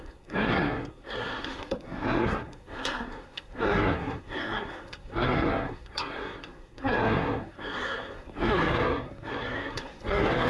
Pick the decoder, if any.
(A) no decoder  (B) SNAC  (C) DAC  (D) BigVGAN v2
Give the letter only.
B